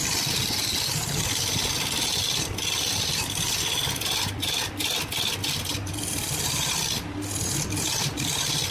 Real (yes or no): yes